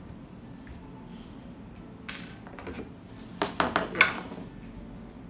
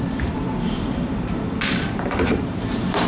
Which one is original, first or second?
first